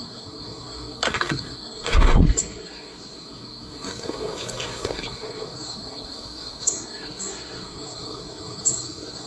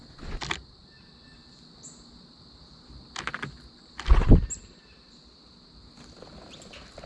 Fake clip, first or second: first